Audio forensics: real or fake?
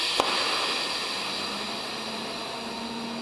real